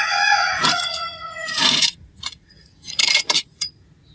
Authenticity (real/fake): fake